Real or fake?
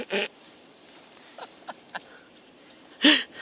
fake